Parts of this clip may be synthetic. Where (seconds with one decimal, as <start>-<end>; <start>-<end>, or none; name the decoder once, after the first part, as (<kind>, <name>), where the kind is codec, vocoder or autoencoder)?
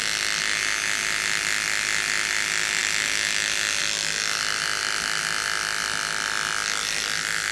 none